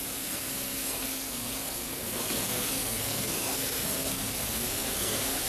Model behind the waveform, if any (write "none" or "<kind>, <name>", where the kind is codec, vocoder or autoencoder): codec, SNAC